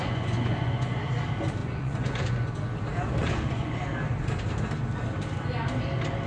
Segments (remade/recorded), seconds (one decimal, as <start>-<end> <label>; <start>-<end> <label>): 0.0-1.0 remade; 1.0-1.6 recorded; 1.6-2.5 remade; 2.5-3.2 recorded; 3.2-3.8 remade; 3.8-6.3 recorded